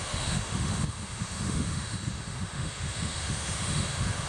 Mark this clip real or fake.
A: fake